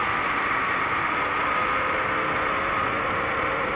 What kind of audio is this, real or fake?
real